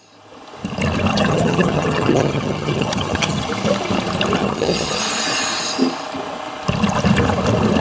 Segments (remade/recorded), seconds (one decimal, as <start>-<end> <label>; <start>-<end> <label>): 0.0-1.1 recorded; 1.1-3.5 remade; 3.5-4.4 recorded; 4.4-5.0 remade; 5.0-7.8 recorded